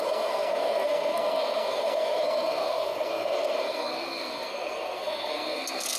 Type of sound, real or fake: fake